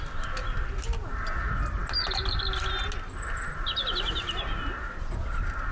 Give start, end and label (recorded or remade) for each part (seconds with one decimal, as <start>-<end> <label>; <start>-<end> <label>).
0.0-5.7 recorded